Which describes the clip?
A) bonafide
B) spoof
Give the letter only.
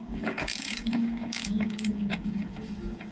B